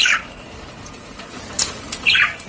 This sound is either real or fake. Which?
real